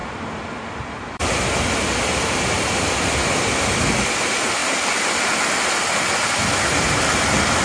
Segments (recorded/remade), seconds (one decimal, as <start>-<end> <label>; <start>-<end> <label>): 0.0-4.6 recorded; 4.6-5.3 remade; 5.3-7.6 recorded